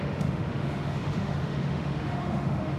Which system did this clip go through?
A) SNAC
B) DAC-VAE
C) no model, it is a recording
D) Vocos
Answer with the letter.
B